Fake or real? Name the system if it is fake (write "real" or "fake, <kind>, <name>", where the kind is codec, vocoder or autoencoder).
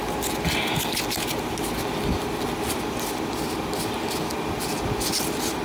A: real